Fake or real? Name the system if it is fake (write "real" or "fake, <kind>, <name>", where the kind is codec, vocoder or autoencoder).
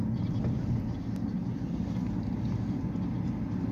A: real